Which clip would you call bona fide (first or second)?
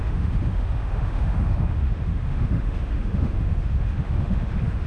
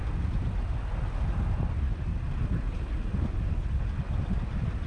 second